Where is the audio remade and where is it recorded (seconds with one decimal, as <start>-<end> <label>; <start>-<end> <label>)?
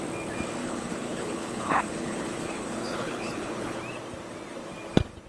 0.0-0.6 recorded; 0.6-3.8 remade; 3.8-5.3 recorded